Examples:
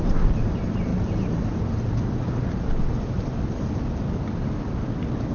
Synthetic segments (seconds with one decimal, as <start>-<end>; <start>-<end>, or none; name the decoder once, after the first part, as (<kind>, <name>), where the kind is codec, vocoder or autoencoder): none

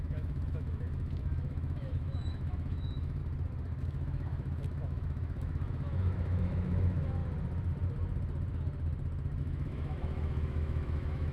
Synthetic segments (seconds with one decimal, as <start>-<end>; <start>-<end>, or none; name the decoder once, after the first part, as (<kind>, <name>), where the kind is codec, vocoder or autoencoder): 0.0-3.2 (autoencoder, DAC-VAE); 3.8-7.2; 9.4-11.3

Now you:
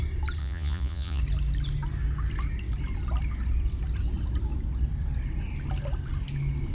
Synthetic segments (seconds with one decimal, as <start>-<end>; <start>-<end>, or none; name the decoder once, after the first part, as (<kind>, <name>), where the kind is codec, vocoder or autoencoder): 0.4-1.2 (vocoder, Vocos)